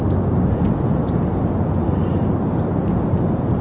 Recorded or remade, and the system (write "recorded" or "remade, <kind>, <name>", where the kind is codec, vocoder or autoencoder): recorded